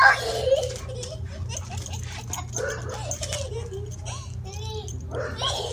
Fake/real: real